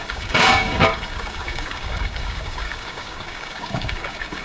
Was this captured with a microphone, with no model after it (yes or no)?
no